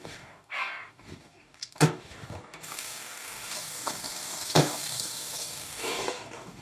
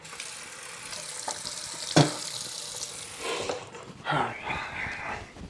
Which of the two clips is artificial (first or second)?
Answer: first